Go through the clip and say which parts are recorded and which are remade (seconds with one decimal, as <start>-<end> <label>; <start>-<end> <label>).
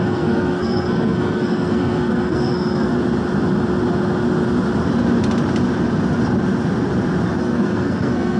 0.0-2.9 remade; 2.9-7.4 recorded; 7.4-8.4 remade